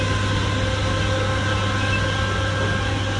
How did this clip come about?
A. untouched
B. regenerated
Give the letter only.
A